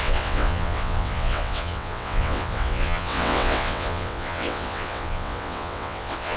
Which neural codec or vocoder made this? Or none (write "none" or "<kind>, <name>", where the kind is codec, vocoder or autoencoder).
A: vocoder, WaveNeXt